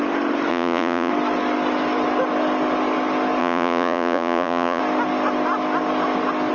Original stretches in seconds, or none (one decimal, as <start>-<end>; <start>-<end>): 0.0-0.5; 1.1-3.4; 4.8-6.5